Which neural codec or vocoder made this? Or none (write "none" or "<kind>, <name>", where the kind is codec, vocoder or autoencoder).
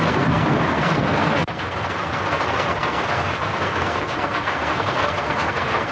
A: codec, SNAC